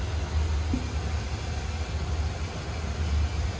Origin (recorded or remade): recorded